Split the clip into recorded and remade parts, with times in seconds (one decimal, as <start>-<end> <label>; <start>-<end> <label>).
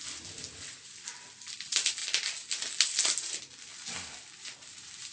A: 0.0-5.1 recorded